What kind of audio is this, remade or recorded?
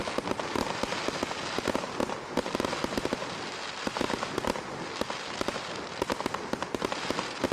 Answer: recorded